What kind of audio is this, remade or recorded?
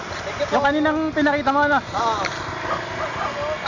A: recorded